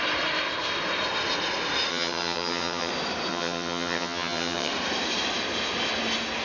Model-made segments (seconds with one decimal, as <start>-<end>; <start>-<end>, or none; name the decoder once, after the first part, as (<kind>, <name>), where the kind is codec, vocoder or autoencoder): 1.9-2.9 (vocoder, HiFi-GAN); 3.3-4.7